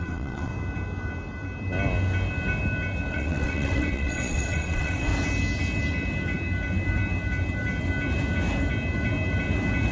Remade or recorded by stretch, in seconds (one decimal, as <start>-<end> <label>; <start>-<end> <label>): 0.0-0.5 remade; 0.5-3.1 recorded; 3.1-5.1 remade; 5.1-9.9 recorded